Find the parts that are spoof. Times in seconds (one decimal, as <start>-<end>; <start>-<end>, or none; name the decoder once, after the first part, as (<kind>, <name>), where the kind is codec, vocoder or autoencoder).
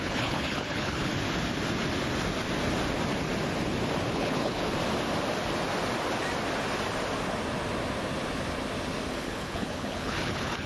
0.0-1.1 (codec, HILCodec); 4.1-4.6; 9.1-10.7